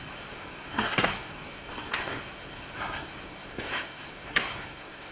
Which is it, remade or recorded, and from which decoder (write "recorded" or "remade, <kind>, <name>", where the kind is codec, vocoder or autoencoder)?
remade, codec, SNAC